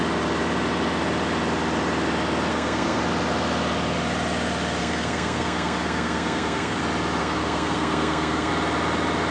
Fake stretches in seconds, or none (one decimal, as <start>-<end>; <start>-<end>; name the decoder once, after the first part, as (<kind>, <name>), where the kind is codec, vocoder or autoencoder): 2.5-3.0 (codec, SNAC); 4.8-6.8; 7.2-8.5